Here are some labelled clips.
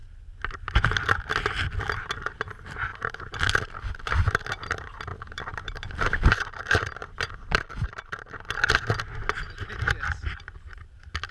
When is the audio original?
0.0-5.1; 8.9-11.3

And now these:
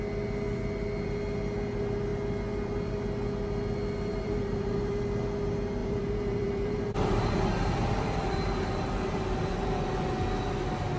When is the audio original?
0.0-4.1; 5.0-5.8; 10.0-11.0